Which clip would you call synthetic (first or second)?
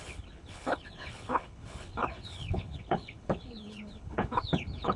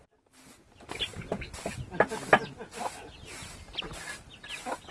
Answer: first